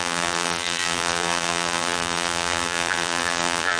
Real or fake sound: fake